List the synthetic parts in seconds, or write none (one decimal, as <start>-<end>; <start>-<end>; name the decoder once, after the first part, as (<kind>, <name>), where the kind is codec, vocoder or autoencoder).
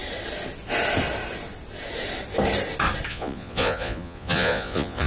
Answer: 3.1-5.1 (vocoder, Vocos)